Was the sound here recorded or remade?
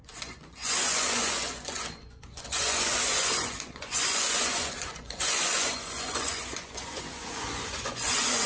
remade